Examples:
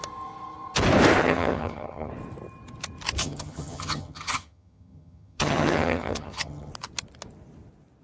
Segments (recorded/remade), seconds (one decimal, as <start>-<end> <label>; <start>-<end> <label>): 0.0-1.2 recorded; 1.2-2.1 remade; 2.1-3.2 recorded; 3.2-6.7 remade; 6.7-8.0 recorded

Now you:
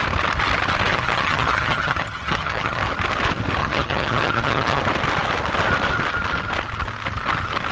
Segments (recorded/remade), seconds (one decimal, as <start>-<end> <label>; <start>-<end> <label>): 0.0-0.9 recorded; 0.9-2.8 remade; 2.8-3.6 recorded; 3.6-4.8 remade; 4.8-7.7 recorded

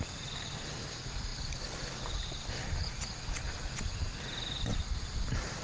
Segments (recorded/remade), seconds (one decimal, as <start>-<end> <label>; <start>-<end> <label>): 0.0-5.6 recorded

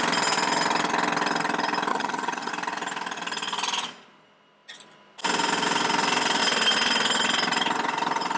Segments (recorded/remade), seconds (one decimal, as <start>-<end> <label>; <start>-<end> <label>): 0.0-1.9 recorded; 1.9-2.5 remade; 2.5-8.4 recorded

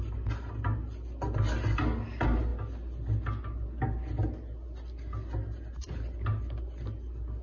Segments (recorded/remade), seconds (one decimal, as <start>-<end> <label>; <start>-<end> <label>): 0.0-7.4 recorded

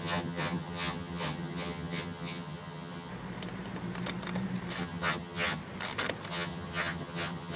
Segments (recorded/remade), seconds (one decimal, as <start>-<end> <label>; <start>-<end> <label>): 0.0-3.1 remade; 3.1-4.8 recorded; 4.8-5.6 remade; 5.6-6.3 recorded; 6.3-7.6 remade

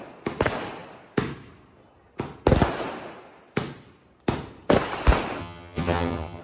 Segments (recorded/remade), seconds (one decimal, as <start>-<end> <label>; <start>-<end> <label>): 0.0-5.4 recorded; 5.4-6.4 remade

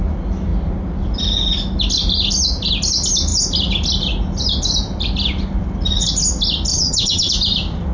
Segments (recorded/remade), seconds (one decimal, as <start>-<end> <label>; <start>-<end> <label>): 0.0-6.7 recorded; 6.7-7.3 remade; 7.3-7.9 recorded